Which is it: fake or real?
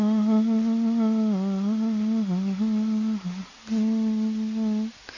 real